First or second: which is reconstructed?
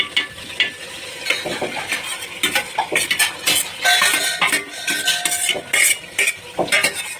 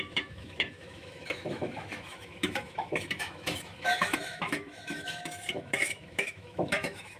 second